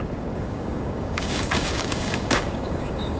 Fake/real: fake